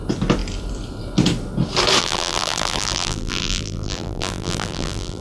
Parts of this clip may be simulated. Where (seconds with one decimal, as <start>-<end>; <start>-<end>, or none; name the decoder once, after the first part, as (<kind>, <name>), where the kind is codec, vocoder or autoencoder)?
2.0-5.2 (vocoder, BigVGAN v2)